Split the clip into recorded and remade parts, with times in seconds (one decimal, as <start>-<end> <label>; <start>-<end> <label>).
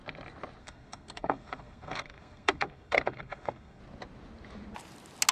0.0-0.6 recorded; 0.6-3.8 remade; 3.8-5.3 recorded